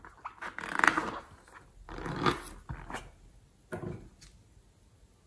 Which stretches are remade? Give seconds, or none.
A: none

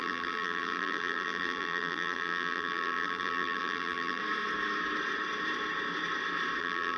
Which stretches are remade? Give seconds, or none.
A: 0.0-4.2; 6.6-7.0

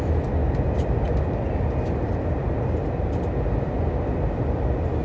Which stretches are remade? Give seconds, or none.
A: none

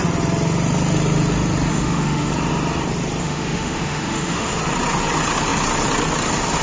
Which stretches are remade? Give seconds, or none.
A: 1.7-2.3; 3.2-4.5